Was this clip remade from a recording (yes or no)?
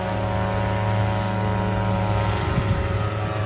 no